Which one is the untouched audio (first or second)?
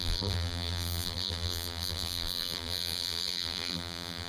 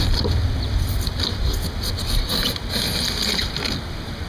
second